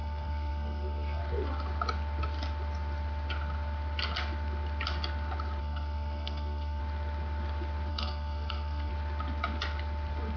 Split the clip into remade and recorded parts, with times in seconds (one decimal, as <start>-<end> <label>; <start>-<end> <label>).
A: 0.0-1.2 remade; 1.2-5.6 recorded; 5.6-6.8 remade; 6.8-7.9 recorded; 7.9-8.9 remade; 8.9-10.4 recorded